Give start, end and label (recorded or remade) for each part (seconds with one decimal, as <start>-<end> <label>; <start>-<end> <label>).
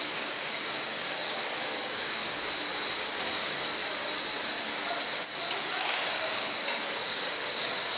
0.0-2.2 remade; 2.2-3.2 recorded; 3.2-3.8 remade; 3.8-5.6 recorded; 5.6-8.0 remade